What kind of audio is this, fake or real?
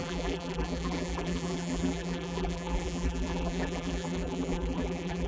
fake